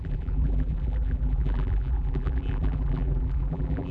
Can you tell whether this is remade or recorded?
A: remade